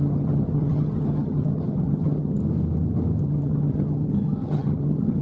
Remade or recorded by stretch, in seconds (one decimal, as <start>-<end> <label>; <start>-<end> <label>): 0.0-2.4 remade; 2.4-3.2 recorded; 3.2-5.2 remade